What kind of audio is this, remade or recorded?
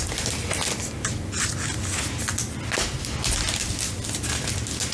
recorded